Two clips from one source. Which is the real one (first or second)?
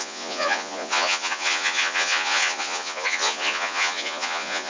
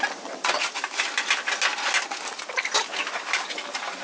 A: second